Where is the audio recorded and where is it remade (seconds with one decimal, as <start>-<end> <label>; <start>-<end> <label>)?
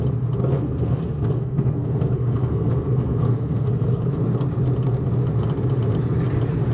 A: 0.0-0.4 recorded; 0.4-4.0 remade; 4.0-6.7 recorded